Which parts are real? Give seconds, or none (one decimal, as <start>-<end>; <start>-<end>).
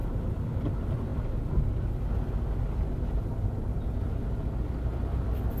0.6-5.6